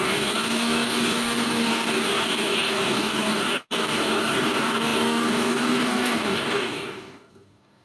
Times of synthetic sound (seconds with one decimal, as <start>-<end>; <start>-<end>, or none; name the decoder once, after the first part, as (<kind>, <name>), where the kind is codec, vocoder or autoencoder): 0.0-7.8 (codec, DAC)